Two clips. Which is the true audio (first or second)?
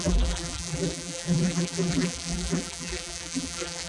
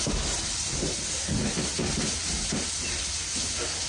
second